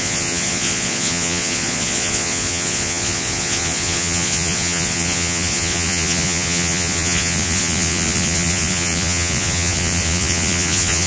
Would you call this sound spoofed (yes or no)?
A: yes